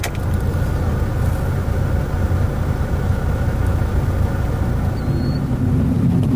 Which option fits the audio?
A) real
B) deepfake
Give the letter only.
A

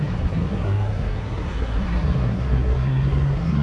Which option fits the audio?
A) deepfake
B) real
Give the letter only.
A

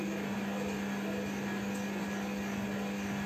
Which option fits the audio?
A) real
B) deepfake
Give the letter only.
A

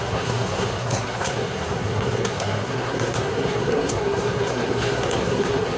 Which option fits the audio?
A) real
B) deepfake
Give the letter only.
B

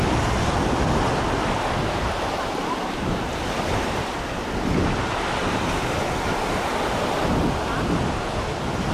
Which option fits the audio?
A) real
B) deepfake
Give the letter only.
A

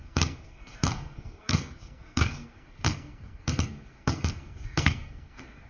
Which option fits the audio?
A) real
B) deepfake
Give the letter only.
B